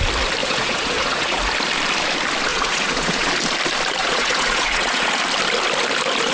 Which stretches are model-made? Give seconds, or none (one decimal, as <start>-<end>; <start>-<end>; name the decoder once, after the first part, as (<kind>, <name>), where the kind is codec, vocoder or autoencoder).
0.4-1.4 (vocoder, Vocos); 2.5-3.3; 4.0-5.2